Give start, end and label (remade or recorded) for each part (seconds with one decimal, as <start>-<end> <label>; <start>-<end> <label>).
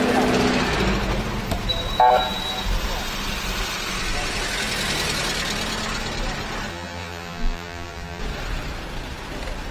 0.0-6.7 recorded; 6.7-8.2 remade; 8.2-9.7 recorded